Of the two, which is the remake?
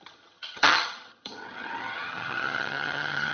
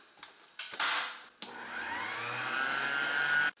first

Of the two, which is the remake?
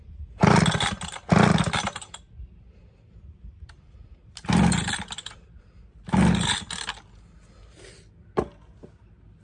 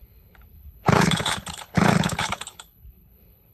second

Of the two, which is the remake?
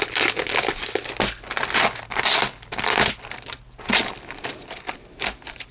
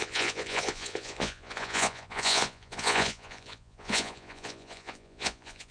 second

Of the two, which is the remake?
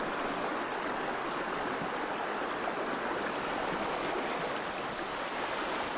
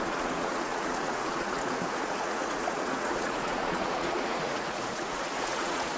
second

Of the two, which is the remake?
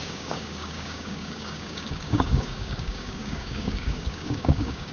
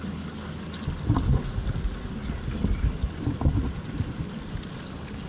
first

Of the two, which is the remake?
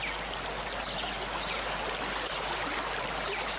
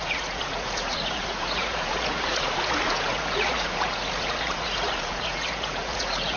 second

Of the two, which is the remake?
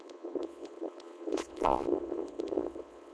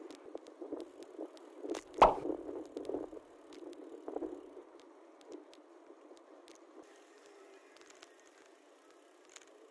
first